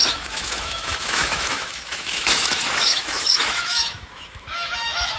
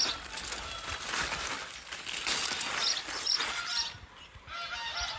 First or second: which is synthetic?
first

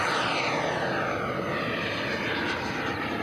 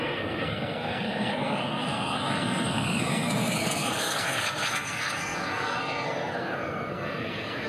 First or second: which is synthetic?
second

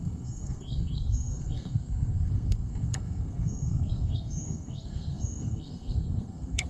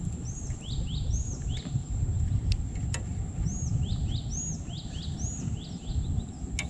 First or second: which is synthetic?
first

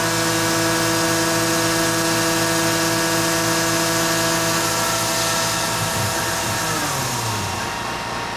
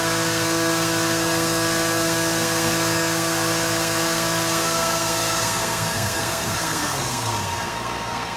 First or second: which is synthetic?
second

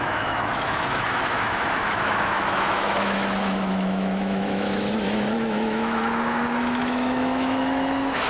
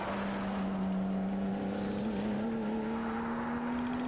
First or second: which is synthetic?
first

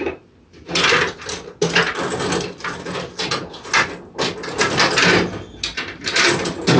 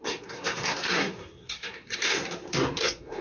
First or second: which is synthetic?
second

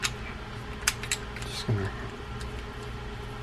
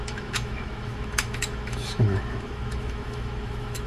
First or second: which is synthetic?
second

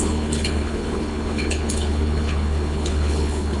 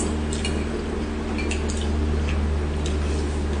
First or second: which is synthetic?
first